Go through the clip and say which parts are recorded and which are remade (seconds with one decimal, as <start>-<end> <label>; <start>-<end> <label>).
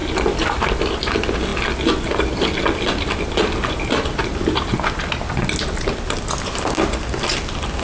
0.0-7.8 recorded